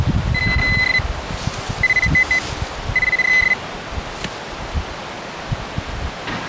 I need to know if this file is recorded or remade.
recorded